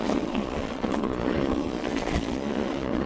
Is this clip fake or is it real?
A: fake